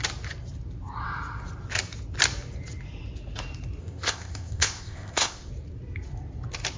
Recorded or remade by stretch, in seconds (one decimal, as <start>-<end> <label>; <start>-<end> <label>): 0.0-3.8 recorded; 3.8-5.5 remade; 5.5-6.8 recorded

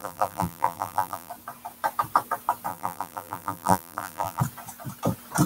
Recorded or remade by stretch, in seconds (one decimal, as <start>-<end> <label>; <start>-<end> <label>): 0.0-1.3 remade; 1.3-2.7 recorded; 2.7-4.4 remade; 4.4-5.5 recorded

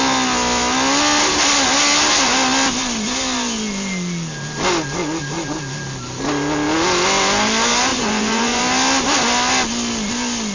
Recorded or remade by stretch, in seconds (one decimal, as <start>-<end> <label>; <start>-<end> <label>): 0.0-7.9 recorded; 7.9-8.6 remade; 8.6-10.5 recorded